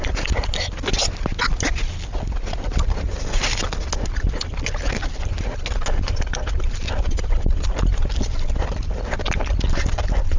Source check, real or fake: real